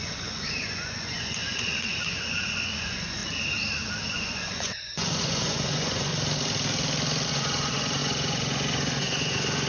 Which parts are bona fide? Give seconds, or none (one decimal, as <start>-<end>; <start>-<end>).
3.2-4.1; 6.1-7.3